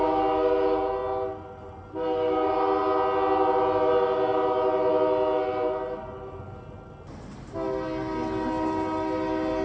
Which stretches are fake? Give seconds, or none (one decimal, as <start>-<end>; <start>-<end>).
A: none